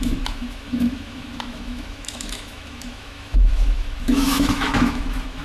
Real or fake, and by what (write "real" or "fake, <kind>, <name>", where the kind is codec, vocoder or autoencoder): fake, autoencoder, DAC-VAE